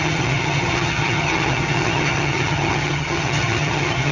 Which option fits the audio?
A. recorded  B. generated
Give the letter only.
B